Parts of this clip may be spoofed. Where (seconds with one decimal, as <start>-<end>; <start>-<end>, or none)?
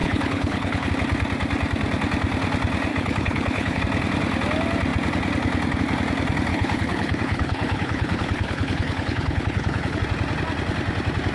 0.0-0.9; 2.9-3.8; 6.5-10.0